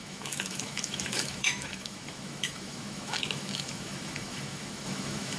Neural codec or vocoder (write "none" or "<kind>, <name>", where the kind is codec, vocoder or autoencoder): autoencoder, DAC-VAE